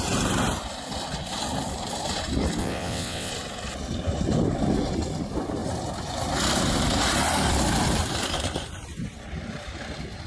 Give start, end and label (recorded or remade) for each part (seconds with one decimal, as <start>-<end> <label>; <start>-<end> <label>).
0.0-2.6 recorded; 2.6-3.3 remade; 3.3-10.3 recorded